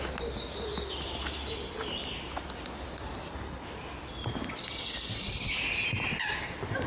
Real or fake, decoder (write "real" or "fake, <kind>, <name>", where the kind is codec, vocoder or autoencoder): real